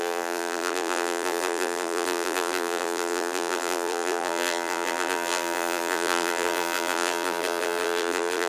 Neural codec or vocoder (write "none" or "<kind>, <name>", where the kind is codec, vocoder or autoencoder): vocoder, BigVGAN v2